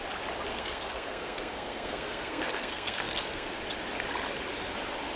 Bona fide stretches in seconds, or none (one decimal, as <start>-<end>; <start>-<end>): 0.0-0.5; 3.6-5.2